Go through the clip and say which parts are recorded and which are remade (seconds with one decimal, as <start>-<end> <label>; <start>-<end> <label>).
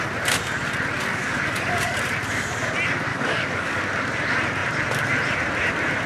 0.0-1.1 recorded; 1.1-2.0 remade; 2.0-3.1 recorded; 3.1-3.8 remade; 3.8-6.1 recorded